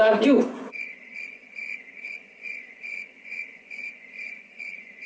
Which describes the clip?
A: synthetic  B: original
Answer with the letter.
A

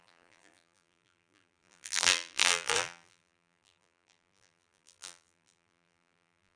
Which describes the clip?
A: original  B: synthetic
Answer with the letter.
B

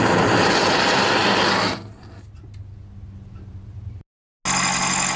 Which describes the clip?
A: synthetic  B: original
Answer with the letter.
B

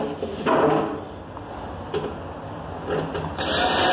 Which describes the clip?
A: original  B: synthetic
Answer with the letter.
A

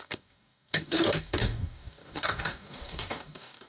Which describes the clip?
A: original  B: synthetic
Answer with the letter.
B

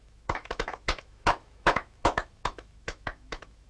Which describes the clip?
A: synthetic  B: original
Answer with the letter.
A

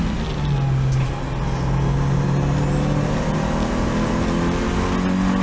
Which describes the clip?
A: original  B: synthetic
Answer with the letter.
A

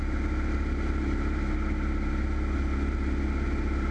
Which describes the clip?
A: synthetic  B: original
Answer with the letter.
B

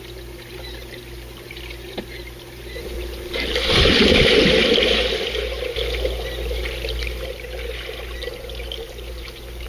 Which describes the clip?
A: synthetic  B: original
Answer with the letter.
B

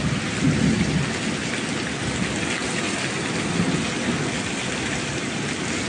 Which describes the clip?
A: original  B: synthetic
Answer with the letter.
A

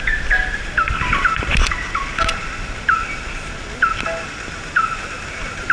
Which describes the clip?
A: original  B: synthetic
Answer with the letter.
A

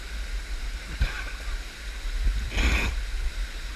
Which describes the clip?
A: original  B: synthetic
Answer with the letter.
A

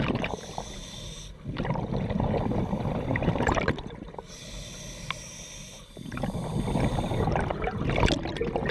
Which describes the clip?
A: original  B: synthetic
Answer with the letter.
A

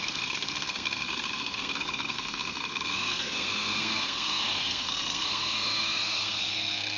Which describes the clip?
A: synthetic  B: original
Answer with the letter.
A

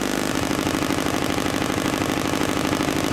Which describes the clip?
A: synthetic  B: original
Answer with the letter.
B